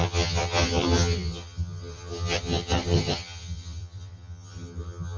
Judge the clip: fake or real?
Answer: fake